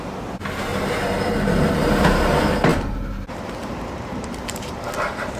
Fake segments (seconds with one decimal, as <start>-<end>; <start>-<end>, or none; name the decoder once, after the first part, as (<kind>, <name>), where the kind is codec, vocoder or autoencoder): 0.7-2.3 (vocoder, BigVGAN v2); 2.7-5.4